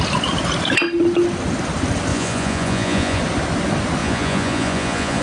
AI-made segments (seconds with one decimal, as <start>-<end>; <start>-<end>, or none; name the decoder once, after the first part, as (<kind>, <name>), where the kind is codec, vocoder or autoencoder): 2.1-3.2 (vocoder, Vocos); 4.0-5.2